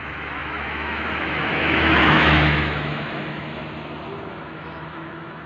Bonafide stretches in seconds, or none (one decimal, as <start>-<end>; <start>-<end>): 3.6-4.3